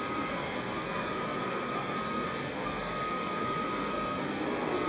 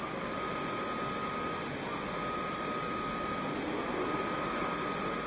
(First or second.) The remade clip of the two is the first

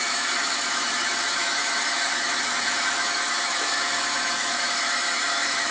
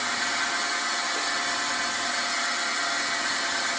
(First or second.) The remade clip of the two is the first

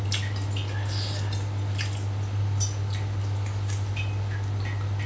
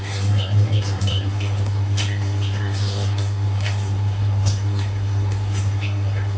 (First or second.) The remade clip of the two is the second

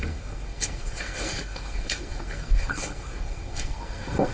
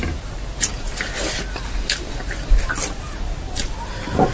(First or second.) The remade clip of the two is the first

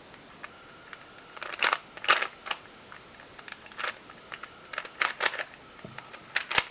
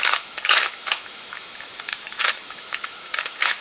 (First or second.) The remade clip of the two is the second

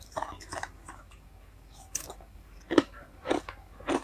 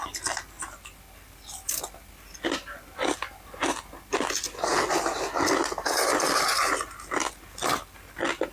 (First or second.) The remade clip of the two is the first